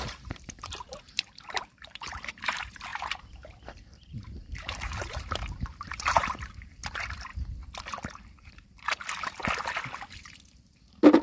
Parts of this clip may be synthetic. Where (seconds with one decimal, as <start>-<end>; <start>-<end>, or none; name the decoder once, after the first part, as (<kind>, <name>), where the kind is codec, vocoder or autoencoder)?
0.0-7.3 (vocoder, BigVGAN v2); 8.4-9.4